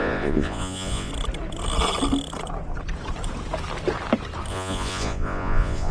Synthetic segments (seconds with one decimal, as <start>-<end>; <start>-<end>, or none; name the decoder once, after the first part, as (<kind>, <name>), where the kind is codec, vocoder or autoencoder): 0.0-1.1 (vocoder, Vocos); 4.5-5.9